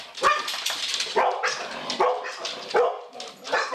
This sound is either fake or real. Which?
real